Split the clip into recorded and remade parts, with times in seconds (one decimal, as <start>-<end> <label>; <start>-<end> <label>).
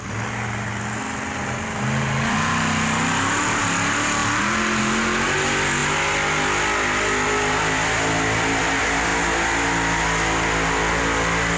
0.0-4.2 recorded; 4.2-4.8 remade; 4.8-11.6 recorded